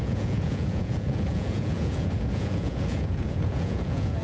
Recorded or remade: remade